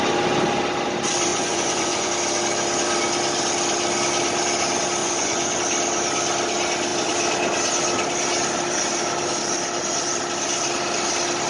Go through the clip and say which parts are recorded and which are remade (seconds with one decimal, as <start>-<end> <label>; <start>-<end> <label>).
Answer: 0.0-1.3 recorded; 1.3-2.1 remade; 2.1-5.0 recorded; 5.0-5.6 remade; 5.6-11.5 recorded